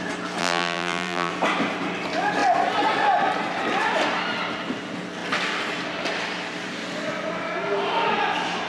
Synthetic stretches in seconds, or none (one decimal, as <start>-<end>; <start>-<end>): 0.4-1.3